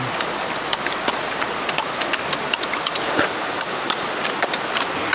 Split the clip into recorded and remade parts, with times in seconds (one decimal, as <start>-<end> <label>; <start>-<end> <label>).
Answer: 0.0-2.9 recorded; 2.9-3.5 remade; 3.5-5.1 recorded